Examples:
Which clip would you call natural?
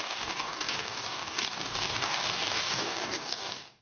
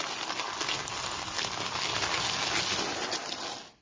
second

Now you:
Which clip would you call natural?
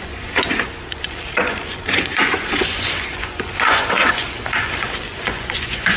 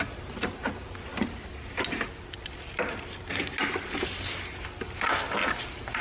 second